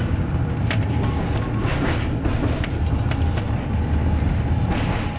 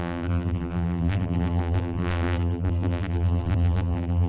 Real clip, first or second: first